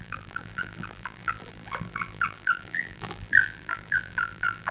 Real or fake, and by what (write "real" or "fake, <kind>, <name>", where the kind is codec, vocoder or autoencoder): fake, vocoder, BigVGAN v2